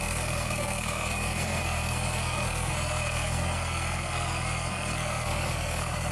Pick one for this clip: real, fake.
fake